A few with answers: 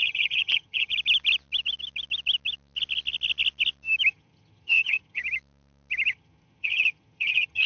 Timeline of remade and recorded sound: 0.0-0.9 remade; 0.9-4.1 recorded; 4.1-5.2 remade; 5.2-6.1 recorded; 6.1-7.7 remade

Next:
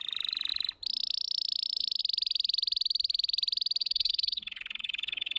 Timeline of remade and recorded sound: 0.0-3.8 recorded; 3.8-5.4 remade

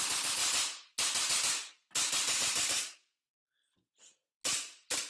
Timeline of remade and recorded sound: 0.0-5.1 recorded

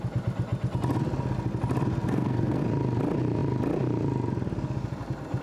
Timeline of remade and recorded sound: 0.0-2.0 recorded; 2.0-2.6 remade; 2.6-5.4 recorded

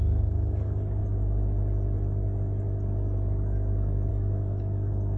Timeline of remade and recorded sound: 0.0-1.0 remade; 1.0-4.1 recorded; 4.1-5.2 remade

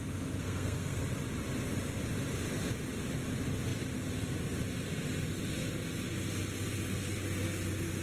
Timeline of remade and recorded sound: 0.0-0.4 recorded; 0.4-1.0 remade; 1.0-8.0 recorded